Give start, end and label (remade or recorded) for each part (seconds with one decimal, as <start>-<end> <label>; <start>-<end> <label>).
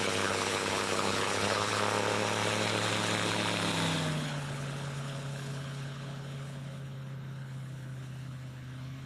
0.0-1.7 remade; 1.7-4.1 recorded; 4.1-9.1 remade